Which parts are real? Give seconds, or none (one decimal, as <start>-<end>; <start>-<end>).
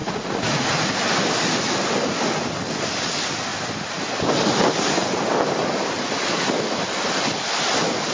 0.7-8.1